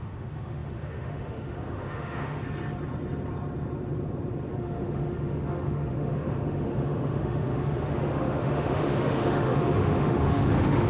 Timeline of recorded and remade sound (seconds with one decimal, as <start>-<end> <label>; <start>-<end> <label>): 0.0-2.4 remade; 2.4-4.6 recorded; 4.6-10.9 remade